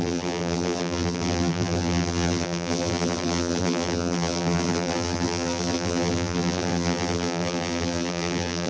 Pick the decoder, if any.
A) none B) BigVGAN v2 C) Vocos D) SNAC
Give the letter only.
B